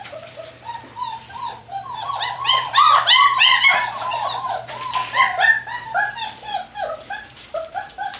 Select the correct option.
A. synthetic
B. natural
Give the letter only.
A